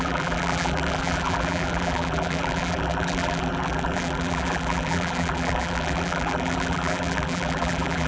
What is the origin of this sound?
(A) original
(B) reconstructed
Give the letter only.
B